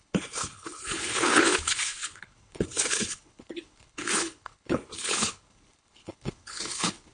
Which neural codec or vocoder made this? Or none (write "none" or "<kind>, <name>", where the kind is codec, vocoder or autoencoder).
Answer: codec, HILCodec